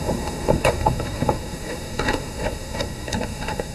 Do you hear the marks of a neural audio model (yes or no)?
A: yes